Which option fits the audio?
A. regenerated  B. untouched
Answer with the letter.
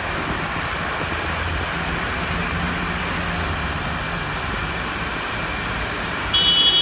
B